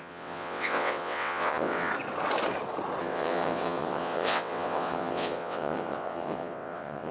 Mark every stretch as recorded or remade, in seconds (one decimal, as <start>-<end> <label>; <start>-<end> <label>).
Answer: 0.0-1.9 remade; 1.9-3.0 recorded; 3.0-7.1 remade